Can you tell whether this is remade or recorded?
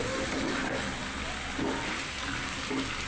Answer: recorded